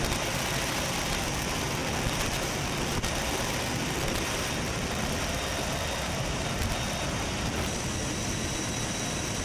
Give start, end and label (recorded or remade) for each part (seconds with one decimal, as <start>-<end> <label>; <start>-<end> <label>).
0.0-9.4 recorded